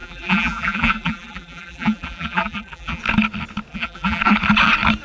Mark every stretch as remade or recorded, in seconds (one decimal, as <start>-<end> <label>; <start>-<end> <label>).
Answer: 0.0-3.0 remade; 3.0-3.7 recorded; 3.7-4.2 remade; 4.2-5.0 recorded